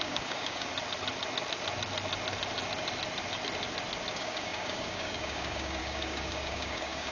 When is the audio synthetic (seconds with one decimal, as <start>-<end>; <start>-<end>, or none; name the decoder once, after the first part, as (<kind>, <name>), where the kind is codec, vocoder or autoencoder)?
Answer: 0.0-0.7 (codec, DAC); 4.1-7.1